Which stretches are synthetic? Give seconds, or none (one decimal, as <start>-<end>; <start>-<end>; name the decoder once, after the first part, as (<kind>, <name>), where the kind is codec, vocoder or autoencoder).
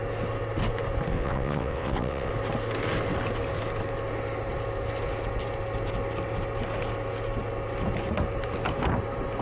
1.1-2.3 (vocoder, WaveNeXt)